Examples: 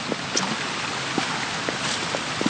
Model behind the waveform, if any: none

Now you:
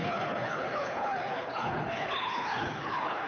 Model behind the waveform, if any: codec, HILCodec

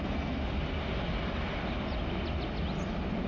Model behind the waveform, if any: none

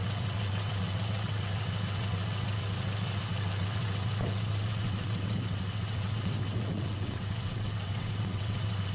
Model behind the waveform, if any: vocoder, WaveNeXt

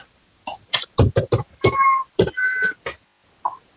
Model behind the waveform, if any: none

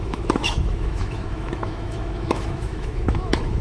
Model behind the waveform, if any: autoencoder, DAC-VAE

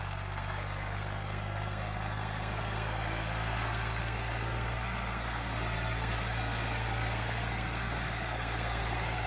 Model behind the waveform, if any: codec, SNAC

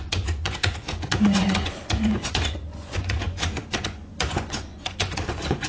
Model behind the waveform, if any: vocoder, Vocos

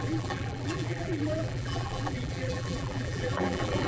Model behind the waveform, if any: vocoder, BigVGAN v2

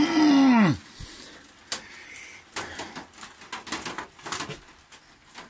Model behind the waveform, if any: none